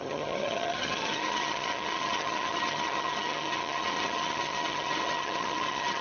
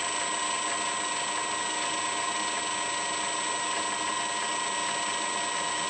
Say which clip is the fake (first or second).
first